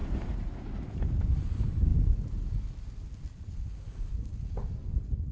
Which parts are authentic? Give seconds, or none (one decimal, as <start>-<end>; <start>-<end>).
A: 0.0-5.3